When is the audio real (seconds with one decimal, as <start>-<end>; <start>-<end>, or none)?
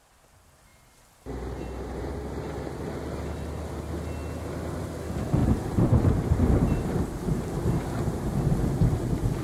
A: 0.0-5.4; 8.3-9.4